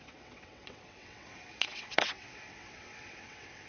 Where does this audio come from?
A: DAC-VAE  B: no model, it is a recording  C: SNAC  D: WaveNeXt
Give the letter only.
D